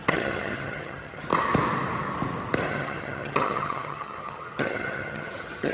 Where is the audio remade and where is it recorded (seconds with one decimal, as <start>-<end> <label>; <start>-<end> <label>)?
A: 0.0-1.3 remade; 1.3-2.7 recorded; 2.7-5.7 remade